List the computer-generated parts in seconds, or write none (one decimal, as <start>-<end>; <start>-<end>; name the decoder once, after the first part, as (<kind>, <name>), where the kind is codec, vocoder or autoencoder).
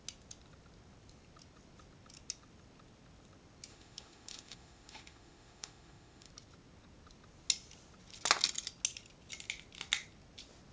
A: 3.7-6.3 (autoencoder, DAC-VAE)